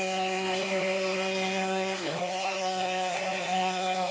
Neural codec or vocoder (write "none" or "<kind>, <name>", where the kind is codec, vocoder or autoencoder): codec, SNAC